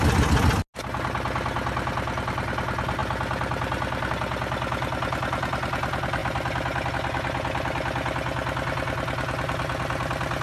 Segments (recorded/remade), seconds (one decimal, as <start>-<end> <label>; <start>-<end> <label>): 0.0-10.4 recorded